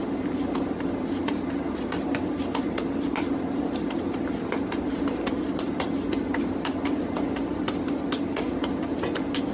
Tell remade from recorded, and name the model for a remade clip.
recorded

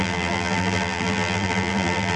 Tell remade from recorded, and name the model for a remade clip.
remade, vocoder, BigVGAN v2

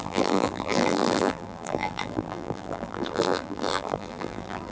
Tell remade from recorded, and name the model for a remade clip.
remade, vocoder, BigVGAN v2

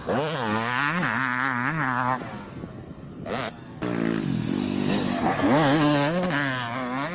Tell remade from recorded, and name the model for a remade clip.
recorded